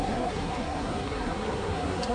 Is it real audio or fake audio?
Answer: fake